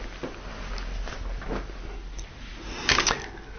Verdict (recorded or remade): recorded